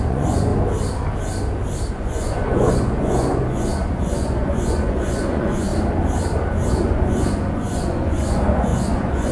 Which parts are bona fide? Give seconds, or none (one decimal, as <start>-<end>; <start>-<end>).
0.5-1.9; 5.7-6.7